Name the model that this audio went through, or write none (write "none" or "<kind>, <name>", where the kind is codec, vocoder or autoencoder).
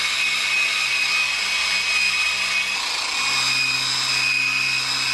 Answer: none